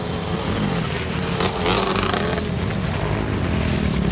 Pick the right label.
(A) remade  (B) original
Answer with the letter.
B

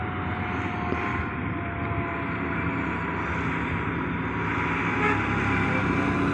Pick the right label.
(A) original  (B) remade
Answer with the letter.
A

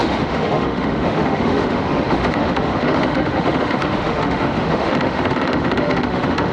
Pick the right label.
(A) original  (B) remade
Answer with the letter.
B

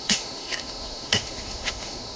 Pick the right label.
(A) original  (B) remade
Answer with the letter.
B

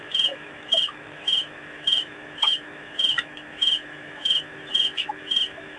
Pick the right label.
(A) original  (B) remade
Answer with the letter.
B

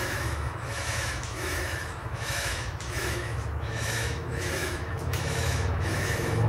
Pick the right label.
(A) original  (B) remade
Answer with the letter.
B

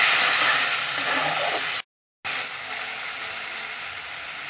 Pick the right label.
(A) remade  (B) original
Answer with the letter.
B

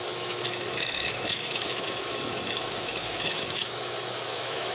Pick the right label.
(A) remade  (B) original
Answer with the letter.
A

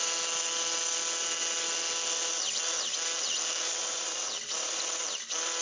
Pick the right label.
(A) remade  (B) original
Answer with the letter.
B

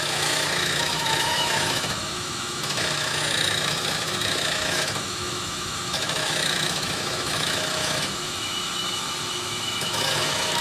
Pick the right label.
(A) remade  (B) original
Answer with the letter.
A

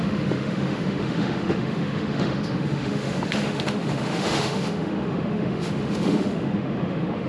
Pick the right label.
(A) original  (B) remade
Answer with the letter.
B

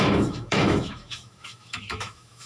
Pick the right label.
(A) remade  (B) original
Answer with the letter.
A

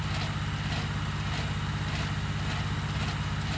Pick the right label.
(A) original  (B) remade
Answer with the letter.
A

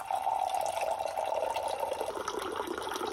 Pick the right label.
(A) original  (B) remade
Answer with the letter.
A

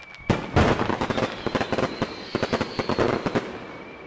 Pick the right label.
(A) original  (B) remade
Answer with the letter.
A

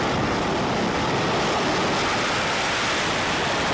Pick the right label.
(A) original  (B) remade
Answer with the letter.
A